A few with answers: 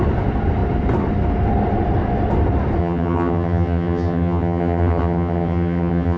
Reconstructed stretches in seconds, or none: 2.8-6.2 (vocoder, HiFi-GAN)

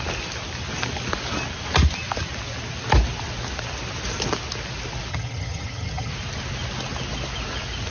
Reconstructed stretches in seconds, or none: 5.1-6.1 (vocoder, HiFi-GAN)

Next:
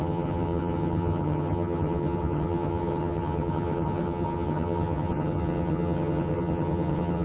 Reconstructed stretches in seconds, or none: 0.0-7.2 (vocoder, HiFi-GAN)